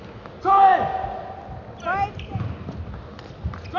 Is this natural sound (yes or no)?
yes